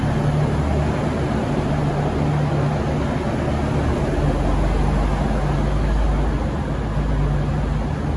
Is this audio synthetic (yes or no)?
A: no